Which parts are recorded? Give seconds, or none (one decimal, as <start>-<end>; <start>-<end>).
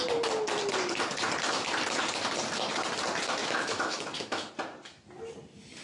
0.0-3.4; 4.5-5.8